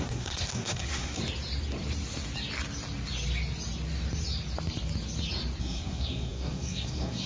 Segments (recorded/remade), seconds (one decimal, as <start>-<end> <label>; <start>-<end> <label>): 0.0-1.2 remade; 1.2-5.6 recorded; 5.6-7.3 remade